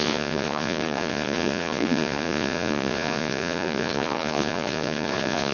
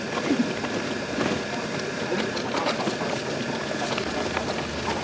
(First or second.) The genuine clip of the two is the second